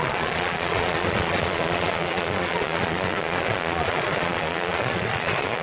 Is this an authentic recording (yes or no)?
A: no